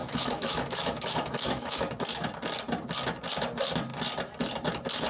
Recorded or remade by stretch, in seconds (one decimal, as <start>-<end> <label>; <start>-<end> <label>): 0.0-1.8 remade; 1.8-5.1 recorded